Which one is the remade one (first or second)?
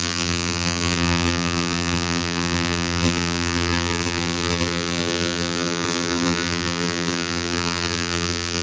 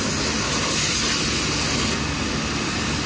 first